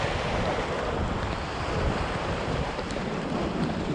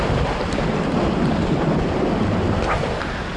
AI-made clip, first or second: first